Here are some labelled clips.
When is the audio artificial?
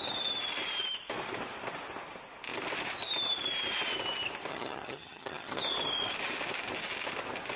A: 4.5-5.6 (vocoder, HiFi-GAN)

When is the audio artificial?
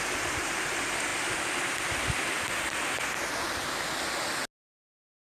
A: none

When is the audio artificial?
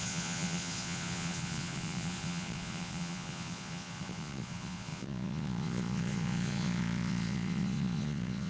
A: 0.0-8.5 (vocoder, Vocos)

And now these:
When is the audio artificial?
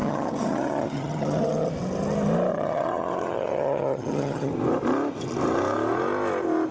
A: 0.0-1.7 (vocoder, HiFi-GAN); 2.5-4.5